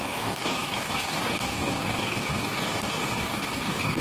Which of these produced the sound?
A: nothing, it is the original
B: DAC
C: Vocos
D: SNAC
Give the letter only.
B